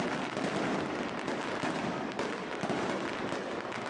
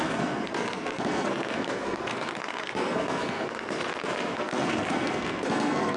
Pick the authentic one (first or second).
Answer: first